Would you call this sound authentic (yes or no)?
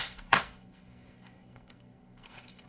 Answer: no